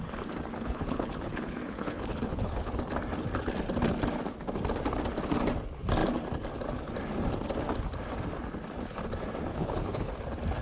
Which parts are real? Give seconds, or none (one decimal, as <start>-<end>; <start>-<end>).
0.0-0.5; 2.7-9.5; 10.1-10.6